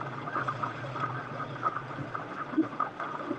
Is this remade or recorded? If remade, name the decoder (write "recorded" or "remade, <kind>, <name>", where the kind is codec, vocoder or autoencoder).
remade, vocoder, Vocos